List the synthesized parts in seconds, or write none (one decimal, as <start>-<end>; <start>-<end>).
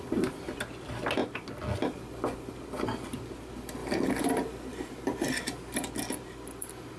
3.8-4.3; 4.7-5.3